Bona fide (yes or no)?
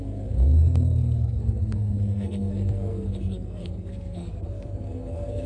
no